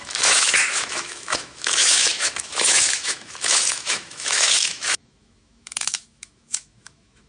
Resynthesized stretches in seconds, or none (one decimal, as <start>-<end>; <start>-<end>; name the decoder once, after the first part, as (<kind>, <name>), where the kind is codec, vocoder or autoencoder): 0.0-7.3 (autoencoder, DAC-VAE)